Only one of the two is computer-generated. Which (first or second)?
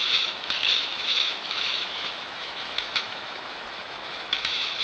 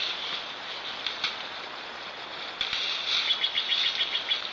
first